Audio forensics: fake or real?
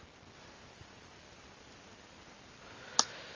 real